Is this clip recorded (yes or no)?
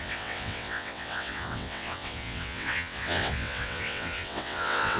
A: no